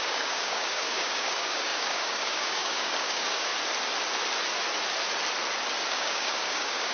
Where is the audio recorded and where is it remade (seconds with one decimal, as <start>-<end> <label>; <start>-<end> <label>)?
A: 0.0-3.5 remade; 3.5-5.9 recorded; 5.9-6.9 remade